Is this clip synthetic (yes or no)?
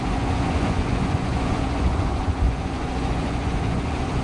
yes